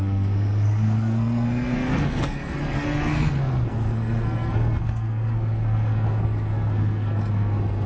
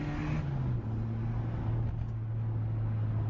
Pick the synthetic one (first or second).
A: first